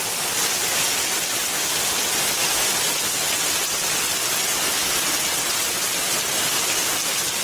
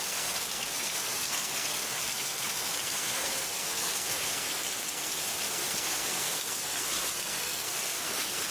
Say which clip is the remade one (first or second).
second